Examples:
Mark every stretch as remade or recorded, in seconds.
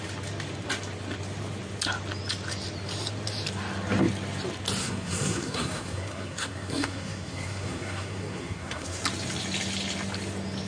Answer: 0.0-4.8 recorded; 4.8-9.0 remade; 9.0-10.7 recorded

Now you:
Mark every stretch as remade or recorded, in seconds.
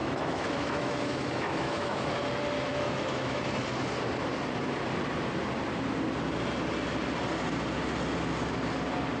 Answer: 0.0-2.1 remade; 2.1-2.7 recorded; 2.7-3.4 remade; 3.4-9.2 recorded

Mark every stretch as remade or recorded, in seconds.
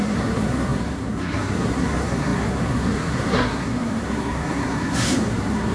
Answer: 0.0-5.7 remade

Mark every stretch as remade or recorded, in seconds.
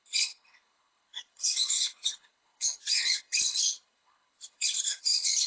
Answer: 0.0-5.5 remade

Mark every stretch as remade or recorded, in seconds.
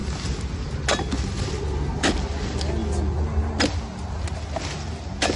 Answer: 0.0-5.4 recorded